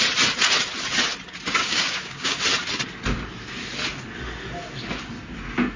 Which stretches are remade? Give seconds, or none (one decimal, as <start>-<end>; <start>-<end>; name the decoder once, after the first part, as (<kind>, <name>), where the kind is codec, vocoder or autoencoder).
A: 1.6-2.4 (codec, DAC)

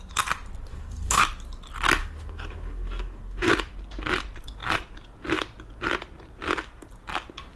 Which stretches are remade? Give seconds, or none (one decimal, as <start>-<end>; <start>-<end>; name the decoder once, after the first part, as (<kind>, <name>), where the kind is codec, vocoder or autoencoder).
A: 0.7-1.2 (codec, DAC); 2.0-3.5

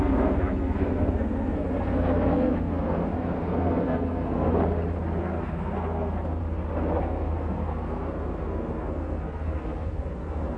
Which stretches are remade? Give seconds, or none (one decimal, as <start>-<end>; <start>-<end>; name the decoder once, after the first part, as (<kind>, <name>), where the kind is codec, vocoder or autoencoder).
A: 0.0-4.5 (codec, SNAC); 5.2-6.4; 7.0-10.6

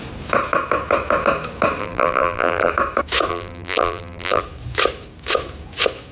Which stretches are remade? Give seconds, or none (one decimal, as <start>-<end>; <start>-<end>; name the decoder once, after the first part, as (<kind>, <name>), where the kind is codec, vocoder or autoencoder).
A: 1.8-2.7 (vocoder, BigVGAN v2); 3.3-4.4

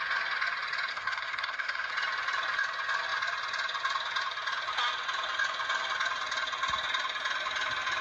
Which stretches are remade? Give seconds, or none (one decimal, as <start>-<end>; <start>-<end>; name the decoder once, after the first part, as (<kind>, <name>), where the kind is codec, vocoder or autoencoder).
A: 0.9-1.9 (codec, SNAC)

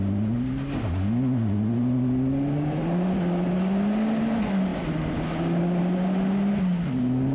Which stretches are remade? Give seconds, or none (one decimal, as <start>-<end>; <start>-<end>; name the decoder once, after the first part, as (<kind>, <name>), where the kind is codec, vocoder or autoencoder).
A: none